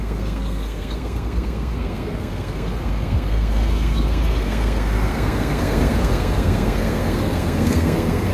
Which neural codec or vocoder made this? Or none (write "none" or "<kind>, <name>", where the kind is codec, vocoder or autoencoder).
codec, SNAC